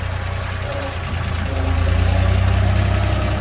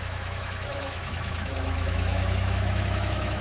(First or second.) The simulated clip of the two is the second